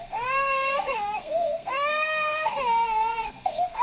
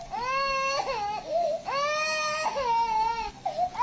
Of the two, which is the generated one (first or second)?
first